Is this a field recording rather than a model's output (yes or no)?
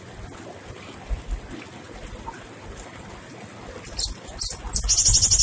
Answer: yes